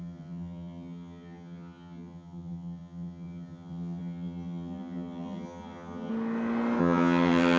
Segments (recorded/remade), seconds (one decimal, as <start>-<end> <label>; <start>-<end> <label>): 0.0-6.1 remade; 6.1-6.8 recorded; 6.8-7.6 remade